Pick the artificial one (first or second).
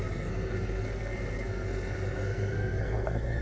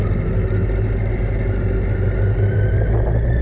first